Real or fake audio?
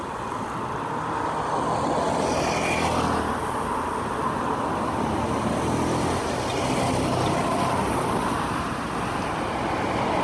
real